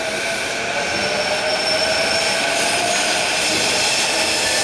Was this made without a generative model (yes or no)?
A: yes